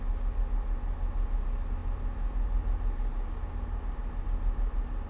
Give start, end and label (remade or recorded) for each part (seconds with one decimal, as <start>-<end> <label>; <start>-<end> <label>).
0.0-5.1 recorded